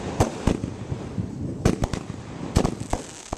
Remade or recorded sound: recorded